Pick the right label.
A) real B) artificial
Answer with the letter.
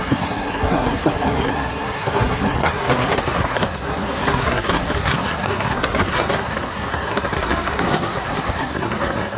B